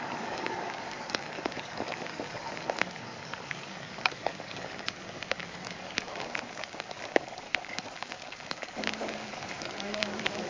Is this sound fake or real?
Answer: fake